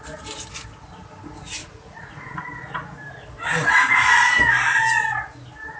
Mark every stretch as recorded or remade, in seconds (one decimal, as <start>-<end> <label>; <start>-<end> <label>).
0.0-1.6 recorded; 1.6-2.4 remade; 2.4-5.8 recorded